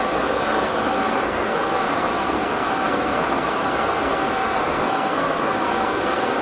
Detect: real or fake fake